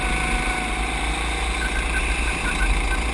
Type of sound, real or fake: real